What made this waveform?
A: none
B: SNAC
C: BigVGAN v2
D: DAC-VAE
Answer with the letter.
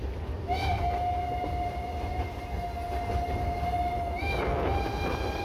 A